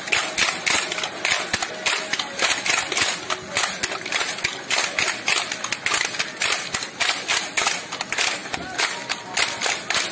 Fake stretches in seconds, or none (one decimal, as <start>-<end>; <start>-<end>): none